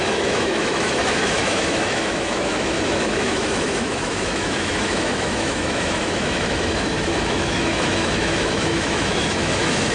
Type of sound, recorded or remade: remade